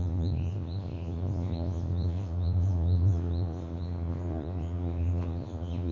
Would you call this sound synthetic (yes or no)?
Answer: yes